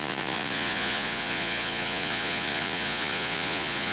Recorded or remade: remade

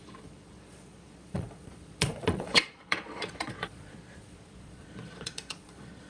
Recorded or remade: remade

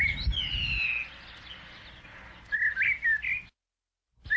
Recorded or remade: recorded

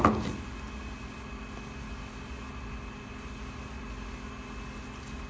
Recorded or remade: recorded